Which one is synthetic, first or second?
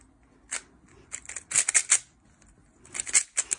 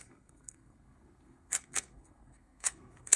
second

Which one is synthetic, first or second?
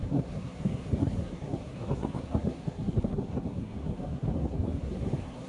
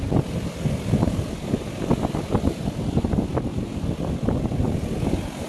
first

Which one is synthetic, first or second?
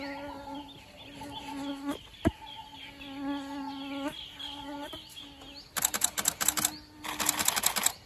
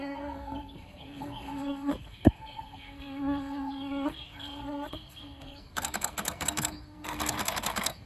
second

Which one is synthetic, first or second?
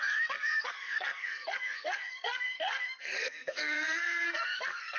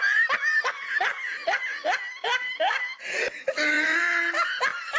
first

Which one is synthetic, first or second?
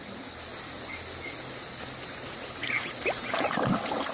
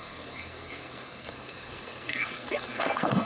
second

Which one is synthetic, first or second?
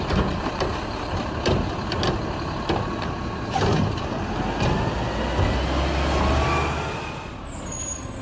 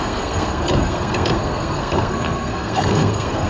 second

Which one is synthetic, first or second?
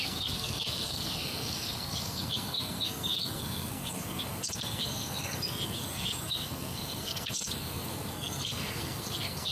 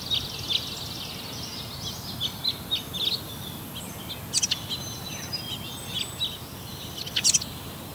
first